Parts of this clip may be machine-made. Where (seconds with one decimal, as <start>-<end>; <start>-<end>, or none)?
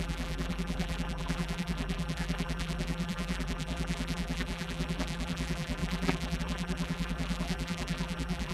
0.0-8.5